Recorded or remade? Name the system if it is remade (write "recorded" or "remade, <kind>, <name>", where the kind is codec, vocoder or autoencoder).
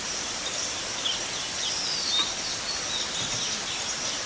recorded